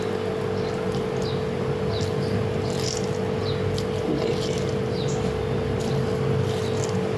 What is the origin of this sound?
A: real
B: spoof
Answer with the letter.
A